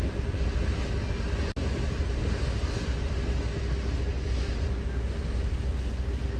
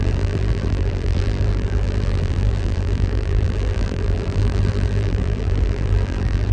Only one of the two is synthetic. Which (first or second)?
second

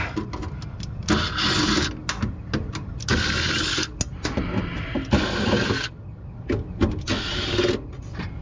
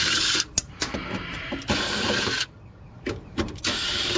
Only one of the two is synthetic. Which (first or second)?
second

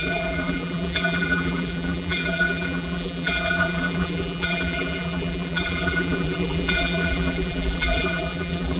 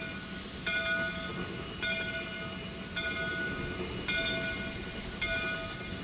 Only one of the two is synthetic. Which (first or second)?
first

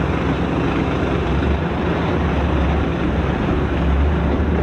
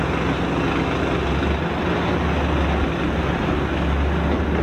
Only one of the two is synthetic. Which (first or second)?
first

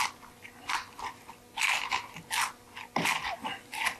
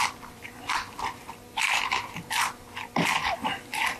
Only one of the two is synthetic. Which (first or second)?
second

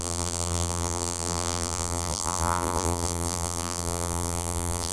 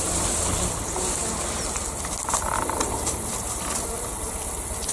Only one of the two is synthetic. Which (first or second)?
first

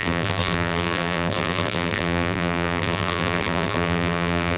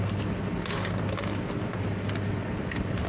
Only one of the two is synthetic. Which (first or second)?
first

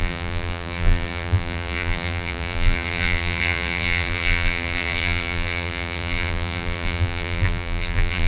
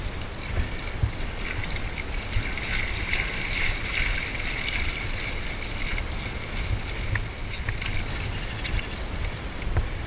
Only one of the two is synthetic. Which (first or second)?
first